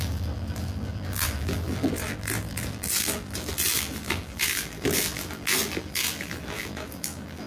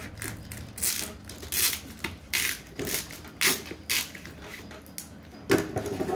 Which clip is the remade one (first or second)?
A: first